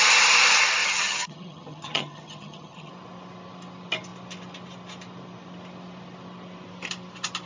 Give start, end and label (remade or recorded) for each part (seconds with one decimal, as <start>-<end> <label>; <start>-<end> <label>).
0.0-0.8 recorded; 0.8-2.9 remade; 2.9-7.5 recorded